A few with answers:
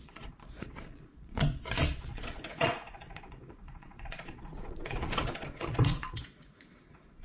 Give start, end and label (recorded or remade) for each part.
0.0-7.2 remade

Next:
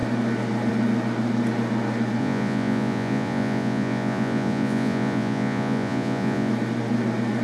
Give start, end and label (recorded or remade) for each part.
0.0-2.2 recorded; 2.2-6.5 remade; 6.5-7.4 recorded

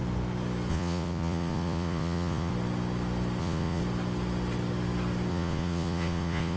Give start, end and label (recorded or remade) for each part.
0.0-0.7 recorded; 0.7-2.5 remade; 2.5-3.4 recorded; 3.4-3.8 remade; 3.8-5.3 recorded; 5.3-6.6 remade